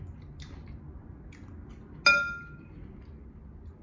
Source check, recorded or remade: recorded